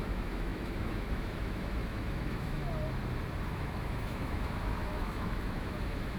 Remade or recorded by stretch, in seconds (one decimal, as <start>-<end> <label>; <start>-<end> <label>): 0.0-2.6 remade; 2.6-3.5 recorded; 3.5-6.2 remade